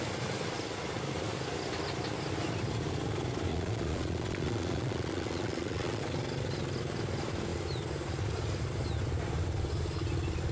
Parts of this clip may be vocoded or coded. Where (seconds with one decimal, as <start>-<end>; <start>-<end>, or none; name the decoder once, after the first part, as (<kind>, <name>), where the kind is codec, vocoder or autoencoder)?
3.5-6.0 (vocoder, Vocos)